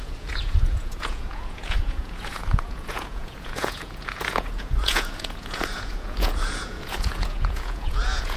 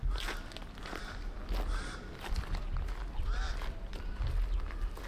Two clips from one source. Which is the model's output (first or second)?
first